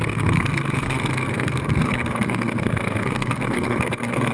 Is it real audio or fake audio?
fake